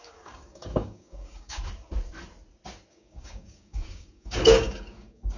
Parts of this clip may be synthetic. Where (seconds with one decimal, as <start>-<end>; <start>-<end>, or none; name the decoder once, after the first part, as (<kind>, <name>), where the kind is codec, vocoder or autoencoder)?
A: 0.0-1.6 (codec, DAC); 2.9-5.4

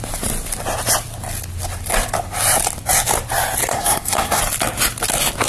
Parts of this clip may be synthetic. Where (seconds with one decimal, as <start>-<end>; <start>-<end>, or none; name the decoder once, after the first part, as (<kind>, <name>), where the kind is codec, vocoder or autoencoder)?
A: 3.7-4.4 (codec, SNAC)

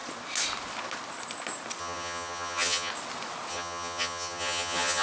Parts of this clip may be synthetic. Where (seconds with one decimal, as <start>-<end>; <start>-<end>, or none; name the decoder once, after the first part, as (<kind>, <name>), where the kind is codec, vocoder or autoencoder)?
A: 1.8-2.9 (vocoder, HiFi-GAN); 3.5-5.0

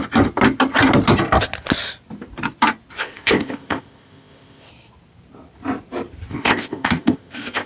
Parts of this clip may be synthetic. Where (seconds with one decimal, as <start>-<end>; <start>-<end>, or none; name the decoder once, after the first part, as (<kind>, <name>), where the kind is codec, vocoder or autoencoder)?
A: 3.0-4.7 (codec, ZipCodec); 6.3-7.7

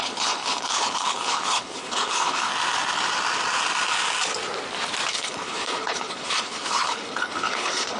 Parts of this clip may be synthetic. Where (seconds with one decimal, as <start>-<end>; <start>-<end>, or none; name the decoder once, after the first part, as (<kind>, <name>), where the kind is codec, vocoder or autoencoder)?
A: 0.0-2.5 (codec, HILCodec); 5.1-8.0

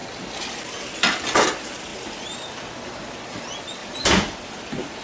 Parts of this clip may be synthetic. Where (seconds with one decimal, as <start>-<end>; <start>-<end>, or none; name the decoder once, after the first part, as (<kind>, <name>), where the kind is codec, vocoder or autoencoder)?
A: 1.9-2.7 (vocoder, BigVGAN v2); 3.8-5.0

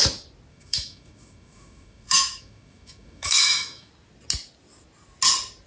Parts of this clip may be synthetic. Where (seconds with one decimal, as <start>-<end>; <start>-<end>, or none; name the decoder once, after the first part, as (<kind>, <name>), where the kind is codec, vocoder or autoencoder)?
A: 0.5-3.9 (autoencoder, DAC-VAE)

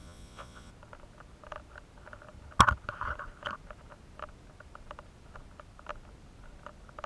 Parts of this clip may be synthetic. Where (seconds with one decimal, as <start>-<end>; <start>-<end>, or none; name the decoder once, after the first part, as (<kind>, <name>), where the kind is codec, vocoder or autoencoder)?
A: 0.0-0.7 (vocoder, Vocos)